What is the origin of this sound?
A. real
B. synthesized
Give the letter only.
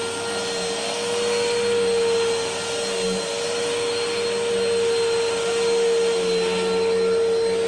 A